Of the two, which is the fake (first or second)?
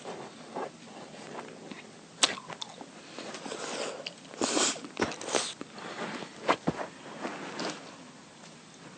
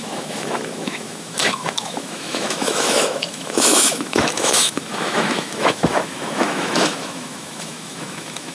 second